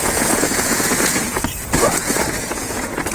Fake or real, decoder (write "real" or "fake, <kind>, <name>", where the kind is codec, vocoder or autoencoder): fake, vocoder, Vocos